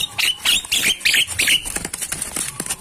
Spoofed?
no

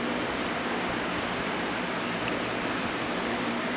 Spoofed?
yes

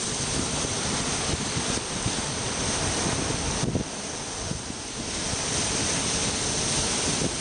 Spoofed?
no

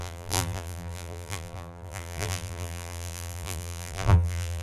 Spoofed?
yes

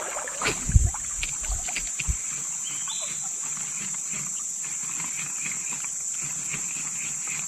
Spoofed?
no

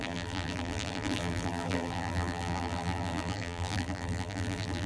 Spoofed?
yes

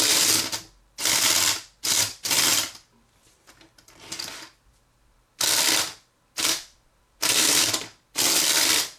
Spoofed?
yes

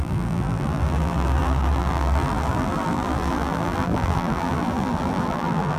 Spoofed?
yes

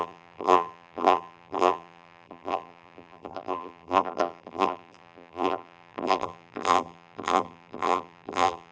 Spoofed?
yes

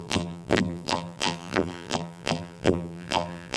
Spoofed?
yes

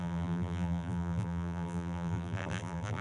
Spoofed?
yes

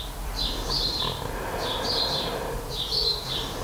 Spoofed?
yes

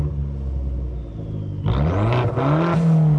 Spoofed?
no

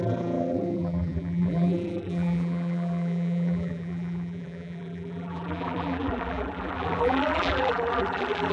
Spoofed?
yes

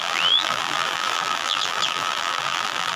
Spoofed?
yes